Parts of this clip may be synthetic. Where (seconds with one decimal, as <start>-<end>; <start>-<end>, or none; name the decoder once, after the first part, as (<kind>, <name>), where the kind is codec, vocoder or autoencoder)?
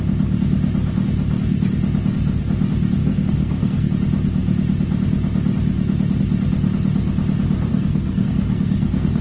3.0-3.9 (codec, SNAC); 7.7-9.2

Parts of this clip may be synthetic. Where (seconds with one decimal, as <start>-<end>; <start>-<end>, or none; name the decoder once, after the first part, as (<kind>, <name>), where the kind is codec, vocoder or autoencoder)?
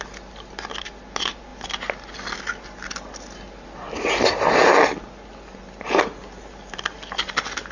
none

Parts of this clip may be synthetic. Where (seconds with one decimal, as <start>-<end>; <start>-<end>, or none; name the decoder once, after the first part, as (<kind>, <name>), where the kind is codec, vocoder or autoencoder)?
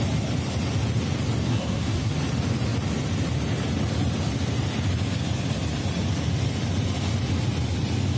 1.5-2.1 (codec, SNAC)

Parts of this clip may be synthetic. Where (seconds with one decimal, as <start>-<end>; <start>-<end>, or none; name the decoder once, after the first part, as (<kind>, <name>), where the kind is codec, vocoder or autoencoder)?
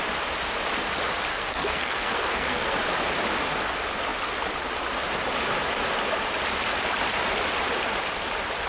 1.3-2.8 (codec, SNAC)